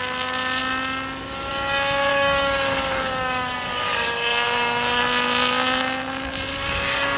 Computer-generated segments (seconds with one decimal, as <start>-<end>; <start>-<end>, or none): 2.1-5.0; 6.5-7.2